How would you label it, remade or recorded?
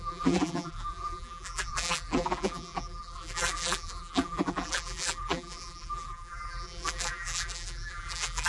remade